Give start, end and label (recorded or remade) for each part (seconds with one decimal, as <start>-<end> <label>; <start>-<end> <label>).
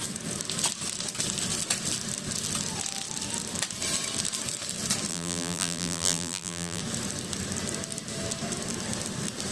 0.0-5.1 recorded; 5.1-6.8 remade; 6.8-9.5 recorded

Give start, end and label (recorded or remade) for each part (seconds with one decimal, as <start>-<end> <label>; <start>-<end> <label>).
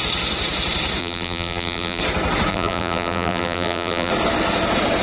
0.0-1.0 recorded; 1.0-2.0 remade; 2.0-2.5 recorded; 2.5-4.1 remade; 4.1-5.0 recorded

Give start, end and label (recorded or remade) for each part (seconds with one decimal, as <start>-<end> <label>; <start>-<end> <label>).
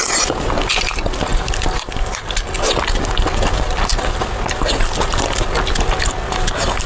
0.0-1.3 recorded; 1.3-2.2 remade; 2.2-6.9 recorded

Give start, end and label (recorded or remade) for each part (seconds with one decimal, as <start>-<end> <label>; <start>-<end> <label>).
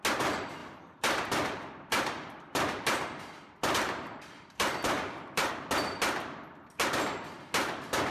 0.0-0.6 recorded; 0.6-5.5 remade; 5.5-8.1 recorded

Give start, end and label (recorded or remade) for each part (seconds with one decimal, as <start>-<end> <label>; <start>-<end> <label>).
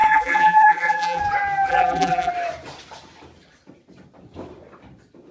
0.0-1.2 remade; 1.2-1.7 recorded; 1.7-2.3 remade; 2.3-5.3 recorded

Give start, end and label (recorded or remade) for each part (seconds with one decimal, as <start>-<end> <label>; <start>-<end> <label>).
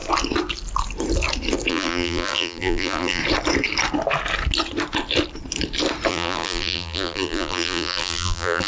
0.0-1.7 recorded; 1.7-3.2 remade; 3.2-6.1 recorded; 6.1-8.7 remade